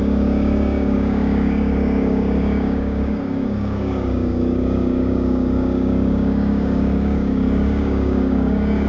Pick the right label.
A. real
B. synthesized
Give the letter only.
B